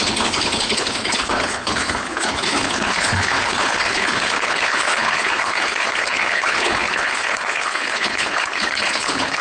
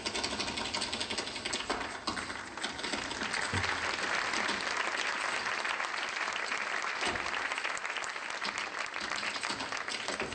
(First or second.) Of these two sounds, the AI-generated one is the first